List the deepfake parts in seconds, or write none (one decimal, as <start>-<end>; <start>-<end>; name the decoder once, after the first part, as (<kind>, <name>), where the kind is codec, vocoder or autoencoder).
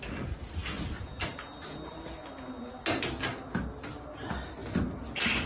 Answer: none